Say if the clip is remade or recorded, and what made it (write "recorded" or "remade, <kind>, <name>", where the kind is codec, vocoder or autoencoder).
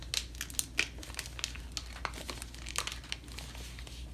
recorded